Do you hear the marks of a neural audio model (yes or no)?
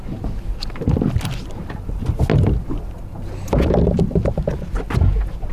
no